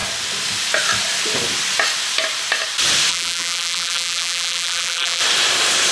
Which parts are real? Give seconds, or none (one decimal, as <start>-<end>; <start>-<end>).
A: 0.0-3.1; 5.2-5.9